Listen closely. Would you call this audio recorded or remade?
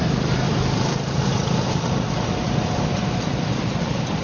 recorded